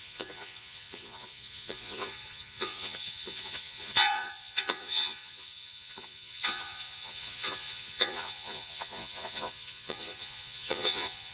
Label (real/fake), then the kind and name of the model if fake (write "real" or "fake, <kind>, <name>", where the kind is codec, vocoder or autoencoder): fake, vocoder, Vocos